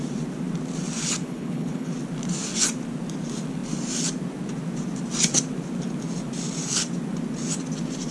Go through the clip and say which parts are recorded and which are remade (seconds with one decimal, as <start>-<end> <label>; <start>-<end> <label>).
0.0-1.2 recorded; 1.2-1.9 remade; 1.9-8.1 recorded